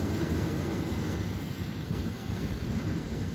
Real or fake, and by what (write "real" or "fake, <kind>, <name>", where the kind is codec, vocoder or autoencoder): fake, codec, SNAC